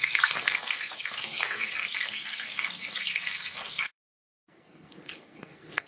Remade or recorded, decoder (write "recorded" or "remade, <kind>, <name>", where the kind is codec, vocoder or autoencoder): remade, codec, SNAC